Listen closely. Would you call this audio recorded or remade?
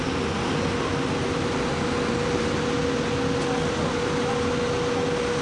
recorded